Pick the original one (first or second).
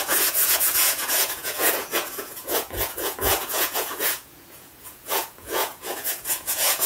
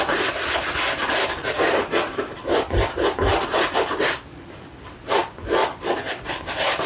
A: second